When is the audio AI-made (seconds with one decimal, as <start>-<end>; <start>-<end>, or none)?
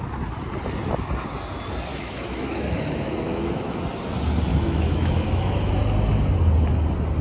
1.9-3.7; 4.5-5.7